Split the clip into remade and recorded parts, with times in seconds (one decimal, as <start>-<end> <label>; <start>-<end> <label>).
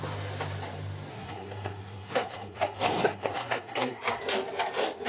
0.0-1.1 recorded; 1.1-4.2 remade; 4.2-5.1 recorded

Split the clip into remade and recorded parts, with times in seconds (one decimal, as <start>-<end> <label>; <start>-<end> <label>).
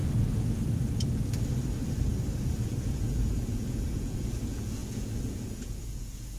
0.0-2.4 recorded; 2.4-6.4 remade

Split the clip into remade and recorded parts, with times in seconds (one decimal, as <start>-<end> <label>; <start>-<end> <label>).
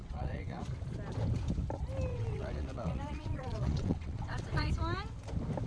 0.0-0.6 remade; 0.6-2.1 recorded; 2.1-4.7 remade; 4.7-5.7 recorded